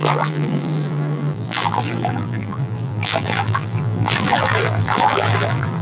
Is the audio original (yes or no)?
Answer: no